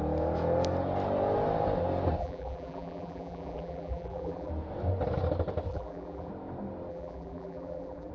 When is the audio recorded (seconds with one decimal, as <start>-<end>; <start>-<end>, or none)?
0.0-2.2; 4.5-5.7; 6.3-6.9